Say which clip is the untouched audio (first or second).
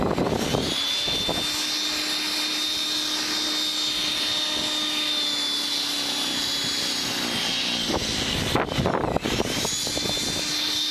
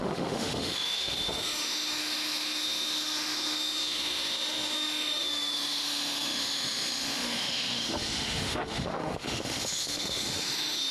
first